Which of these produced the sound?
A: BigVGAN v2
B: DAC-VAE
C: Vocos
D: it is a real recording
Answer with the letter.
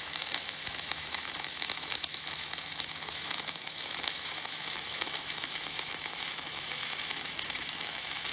B